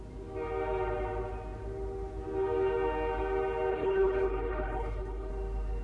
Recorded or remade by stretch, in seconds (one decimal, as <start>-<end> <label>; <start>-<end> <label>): 0.0-3.7 recorded; 3.7-5.3 remade; 5.3-5.8 recorded